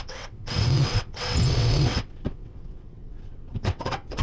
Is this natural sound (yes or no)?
no